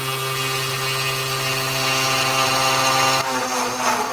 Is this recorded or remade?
recorded